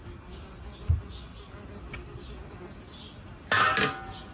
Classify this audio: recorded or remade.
recorded